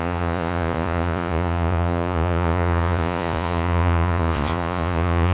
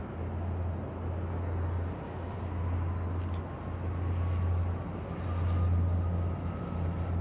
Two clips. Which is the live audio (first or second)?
second